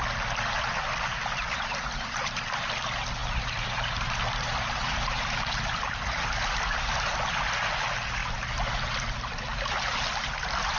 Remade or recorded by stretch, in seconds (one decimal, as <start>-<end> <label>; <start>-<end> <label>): 0.0-0.8 recorded; 0.8-8.2 remade; 8.2-9.3 recorded; 9.3-10.8 remade